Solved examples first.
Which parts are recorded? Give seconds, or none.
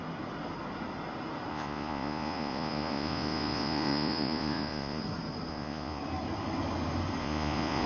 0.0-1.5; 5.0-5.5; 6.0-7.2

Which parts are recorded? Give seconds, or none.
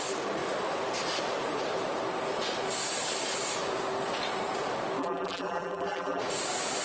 0.0-5.0; 6.2-6.8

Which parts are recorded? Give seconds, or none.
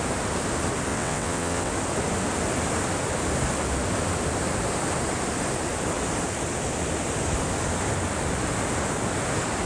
0.0-0.9; 1.7-9.7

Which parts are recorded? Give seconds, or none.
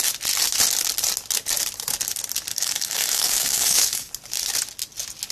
0.0-2.5; 4.1-5.3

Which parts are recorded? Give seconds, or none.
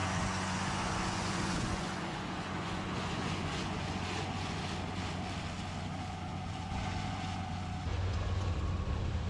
4.6-6.3; 7.5-7.9; 8.5-9.3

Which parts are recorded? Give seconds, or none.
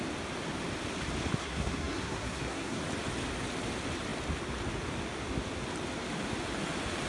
0.0-1.4; 2.8-7.1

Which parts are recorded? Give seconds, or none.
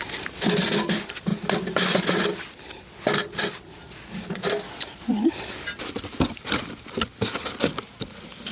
0.0-8.5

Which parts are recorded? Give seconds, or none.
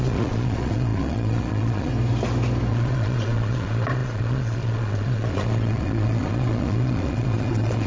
1.9-2.7